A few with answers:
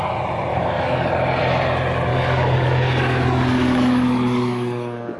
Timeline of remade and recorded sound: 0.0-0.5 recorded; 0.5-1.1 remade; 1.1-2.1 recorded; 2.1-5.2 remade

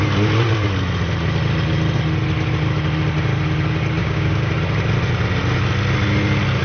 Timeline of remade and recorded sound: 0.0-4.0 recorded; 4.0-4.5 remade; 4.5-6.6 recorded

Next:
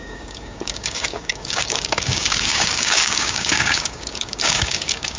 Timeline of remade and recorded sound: 0.0-5.2 remade